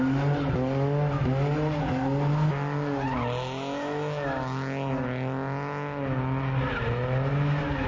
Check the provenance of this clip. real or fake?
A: real